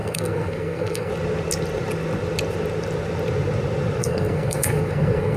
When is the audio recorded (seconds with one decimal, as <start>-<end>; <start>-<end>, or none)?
1.1-4.0